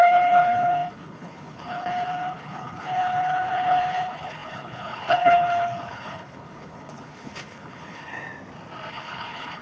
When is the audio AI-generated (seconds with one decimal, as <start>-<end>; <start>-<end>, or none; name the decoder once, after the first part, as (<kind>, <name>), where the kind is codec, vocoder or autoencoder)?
0.0-8.1 (codec, HILCodec); 8.9-9.6